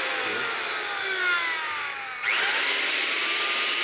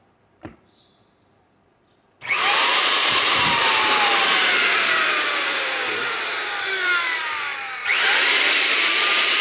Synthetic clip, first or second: second